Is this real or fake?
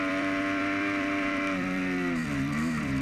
fake